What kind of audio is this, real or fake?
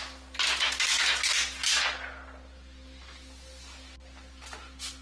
real